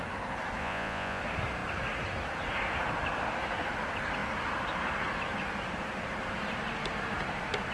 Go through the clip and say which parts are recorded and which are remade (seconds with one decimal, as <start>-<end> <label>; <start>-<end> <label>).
0.0-0.6 recorded; 0.6-1.2 remade; 1.2-7.7 recorded